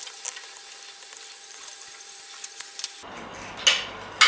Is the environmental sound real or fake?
real